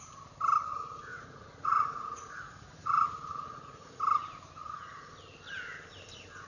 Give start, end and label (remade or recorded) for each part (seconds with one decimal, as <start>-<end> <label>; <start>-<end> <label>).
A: 0.0-1.1 recorded; 1.1-4.0 remade; 4.0-4.6 recorded; 4.6-5.1 remade; 5.1-6.5 recorded